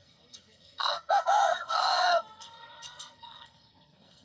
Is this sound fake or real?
fake